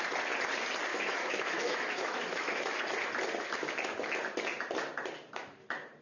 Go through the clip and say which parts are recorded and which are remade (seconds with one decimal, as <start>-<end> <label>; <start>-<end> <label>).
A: 0.0-0.9 recorded; 0.9-2.8 remade; 2.8-6.0 recorded